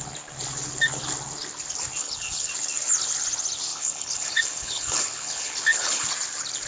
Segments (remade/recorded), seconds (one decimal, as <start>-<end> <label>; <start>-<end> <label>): 0.0-2.0 recorded; 2.0-2.5 remade; 2.5-3.7 recorded; 3.7-6.1 remade; 6.1-6.7 recorded